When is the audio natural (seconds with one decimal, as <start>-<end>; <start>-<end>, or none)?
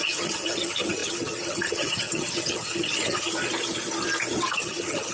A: 3.3-4.5